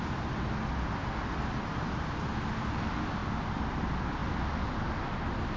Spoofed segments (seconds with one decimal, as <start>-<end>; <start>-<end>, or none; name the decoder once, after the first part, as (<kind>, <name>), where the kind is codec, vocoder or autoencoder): none